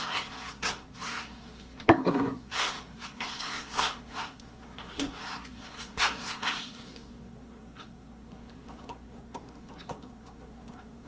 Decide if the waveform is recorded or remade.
remade